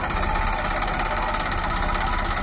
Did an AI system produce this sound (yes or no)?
no